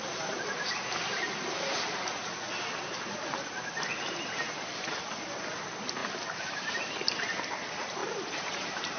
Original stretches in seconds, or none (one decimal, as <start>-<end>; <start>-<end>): 0.0-6.0; 6.7-8.0